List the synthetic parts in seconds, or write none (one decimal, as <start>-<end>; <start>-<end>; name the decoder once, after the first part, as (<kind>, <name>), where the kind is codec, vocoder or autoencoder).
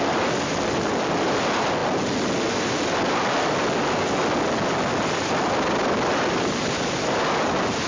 none